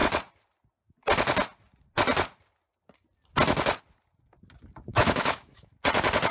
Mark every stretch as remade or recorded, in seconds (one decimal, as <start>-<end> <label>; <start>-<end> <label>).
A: 0.0-4.9 recorded; 4.9-5.7 remade; 5.7-6.3 recorded